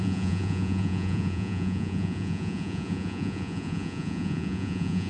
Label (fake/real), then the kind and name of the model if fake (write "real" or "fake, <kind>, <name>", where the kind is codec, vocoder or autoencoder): fake, vocoder, Vocos